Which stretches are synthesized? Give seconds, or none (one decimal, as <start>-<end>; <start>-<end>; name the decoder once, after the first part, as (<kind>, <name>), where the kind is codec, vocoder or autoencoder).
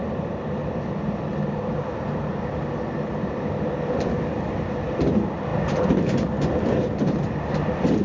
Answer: none